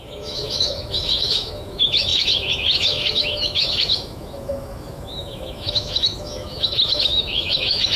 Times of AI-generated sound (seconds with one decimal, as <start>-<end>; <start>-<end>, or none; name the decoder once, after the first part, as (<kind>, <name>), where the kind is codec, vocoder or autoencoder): 0.0-8.0 (autoencoder, DAC-VAE)